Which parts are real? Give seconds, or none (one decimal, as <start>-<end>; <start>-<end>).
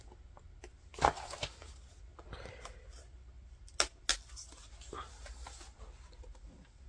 0.0-6.9